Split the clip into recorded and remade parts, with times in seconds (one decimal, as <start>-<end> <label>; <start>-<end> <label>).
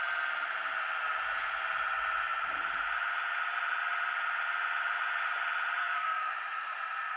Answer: 0.0-5.8 recorded; 5.8-6.3 remade; 6.3-7.2 recorded